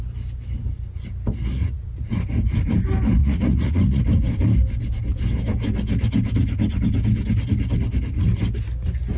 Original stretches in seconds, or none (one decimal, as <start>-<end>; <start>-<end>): 0.0-1.4; 2.1-3.2; 4.0-9.2